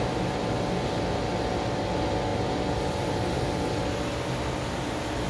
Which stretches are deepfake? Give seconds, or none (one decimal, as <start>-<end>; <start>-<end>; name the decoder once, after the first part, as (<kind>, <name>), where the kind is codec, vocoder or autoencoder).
none